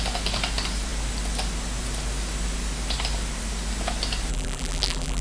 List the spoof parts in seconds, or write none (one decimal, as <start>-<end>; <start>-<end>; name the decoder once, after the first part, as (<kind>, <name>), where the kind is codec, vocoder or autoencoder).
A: 4.3-5.2 (vocoder, BigVGAN v2)